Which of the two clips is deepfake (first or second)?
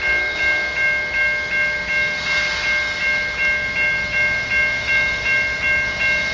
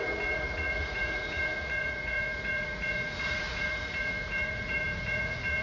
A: second